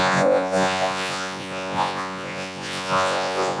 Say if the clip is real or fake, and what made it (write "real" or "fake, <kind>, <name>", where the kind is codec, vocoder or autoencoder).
fake, vocoder, Vocos